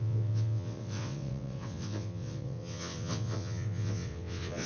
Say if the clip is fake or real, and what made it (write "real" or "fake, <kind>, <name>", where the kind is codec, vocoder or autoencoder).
fake, vocoder, WaveNeXt